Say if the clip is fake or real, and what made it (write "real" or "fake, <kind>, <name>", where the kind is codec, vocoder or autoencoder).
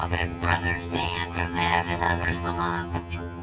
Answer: fake, vocoder, HiFi-GAN